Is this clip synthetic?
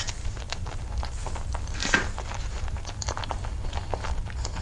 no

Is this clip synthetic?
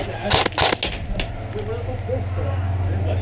no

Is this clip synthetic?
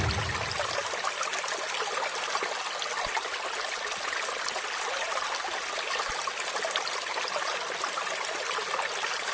no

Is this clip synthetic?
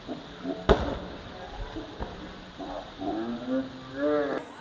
no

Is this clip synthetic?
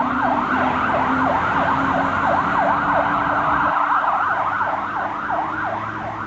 no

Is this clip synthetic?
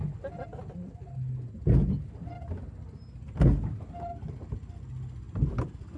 no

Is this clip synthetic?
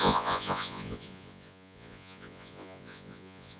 yes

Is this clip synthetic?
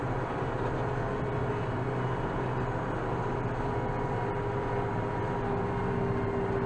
no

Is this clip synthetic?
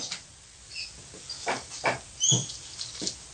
no